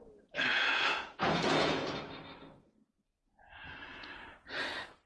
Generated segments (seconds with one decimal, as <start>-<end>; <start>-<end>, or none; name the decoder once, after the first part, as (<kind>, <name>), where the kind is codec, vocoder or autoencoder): 0.5-2.0 (vocoder, Vocos); 3.6-4.2